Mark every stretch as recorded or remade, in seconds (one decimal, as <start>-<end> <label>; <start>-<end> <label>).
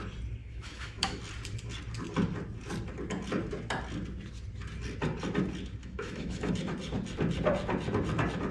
0.0-0.4 recorded; 0.4-1.2 remade; 1.2-5.8 recorded; 5.8-6.5 remade; 6.5-8.5 recorded